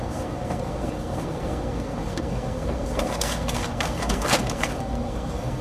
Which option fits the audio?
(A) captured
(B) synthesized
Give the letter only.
B